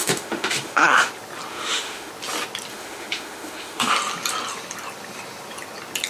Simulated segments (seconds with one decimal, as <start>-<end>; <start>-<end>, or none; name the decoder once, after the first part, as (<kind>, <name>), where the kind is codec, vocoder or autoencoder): 0.0-1.1 (autoencoder, DAC-VAE); 1.5-2.1; 2.7-3.9